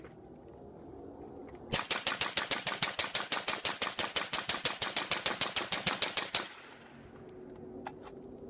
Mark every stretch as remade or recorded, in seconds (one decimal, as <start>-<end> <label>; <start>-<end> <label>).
0.0-8.5 recorded

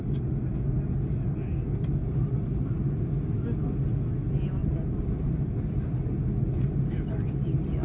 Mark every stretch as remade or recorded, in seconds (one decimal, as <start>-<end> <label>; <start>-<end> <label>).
0.0-2.0 recorded; 2.0-3.0 remade; 3.0-4.6 recorded; 4.6-5.4 remade; 5.4-7.8 recorded